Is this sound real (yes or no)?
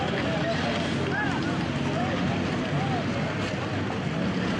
yes